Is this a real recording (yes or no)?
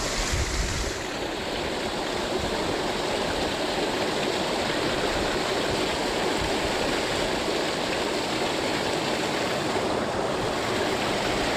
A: yes